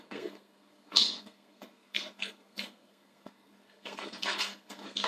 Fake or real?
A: fake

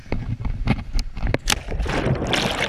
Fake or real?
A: real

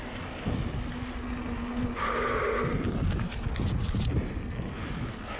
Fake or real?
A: real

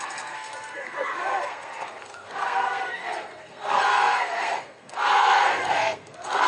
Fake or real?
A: fake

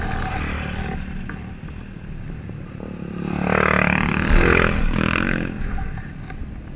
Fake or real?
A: real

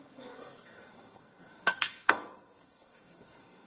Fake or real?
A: fake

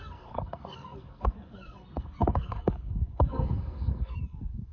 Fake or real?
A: fake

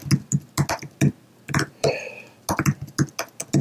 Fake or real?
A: real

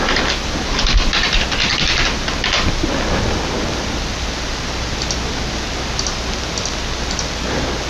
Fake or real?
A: real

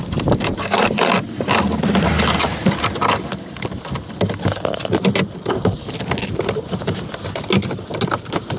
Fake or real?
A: real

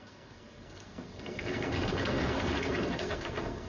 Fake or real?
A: fake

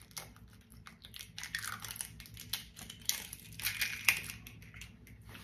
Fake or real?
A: real